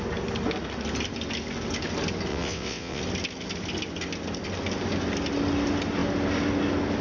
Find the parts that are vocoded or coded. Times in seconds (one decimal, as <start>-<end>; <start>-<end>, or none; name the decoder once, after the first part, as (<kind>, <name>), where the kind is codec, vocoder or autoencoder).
2.3-3.0 (vocoder, WaveNeXt)